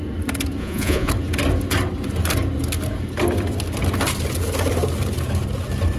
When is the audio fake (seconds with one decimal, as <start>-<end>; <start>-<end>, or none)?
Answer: 0.6-1.1